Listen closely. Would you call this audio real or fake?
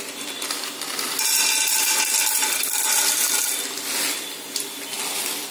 real